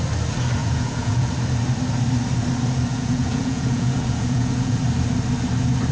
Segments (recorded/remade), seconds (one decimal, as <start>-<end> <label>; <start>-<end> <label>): 0.0-0.6 recorded; 0.6-1.3 remade; 1.3-2.9 recorded; 2.9-4.8 remade; 4.8-5.9 recorded